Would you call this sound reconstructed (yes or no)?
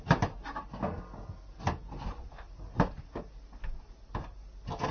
no